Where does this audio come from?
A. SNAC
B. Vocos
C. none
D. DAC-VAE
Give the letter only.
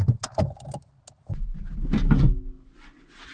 C